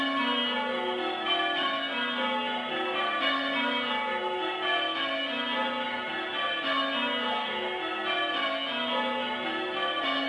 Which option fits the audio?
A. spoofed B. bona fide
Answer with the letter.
B